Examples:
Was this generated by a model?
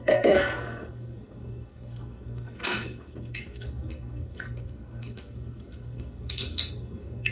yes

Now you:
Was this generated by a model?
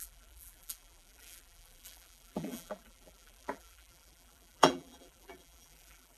yes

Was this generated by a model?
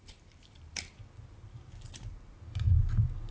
no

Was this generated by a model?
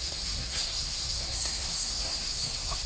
yes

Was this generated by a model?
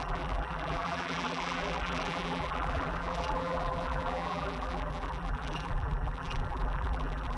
yes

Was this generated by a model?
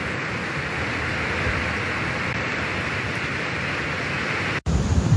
no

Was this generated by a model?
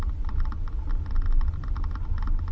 no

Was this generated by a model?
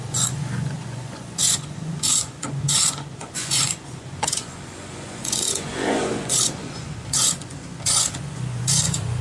yes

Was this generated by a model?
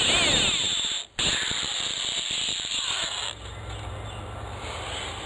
no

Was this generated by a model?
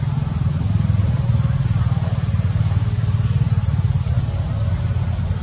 no